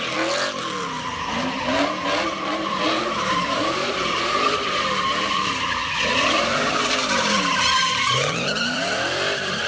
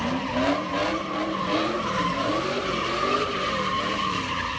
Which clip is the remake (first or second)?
first